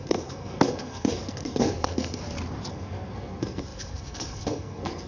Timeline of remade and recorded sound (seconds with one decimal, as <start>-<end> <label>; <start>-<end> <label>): 0.0-2.2 remade; 2.2-2.7 recorded; 2.7-5.1 remade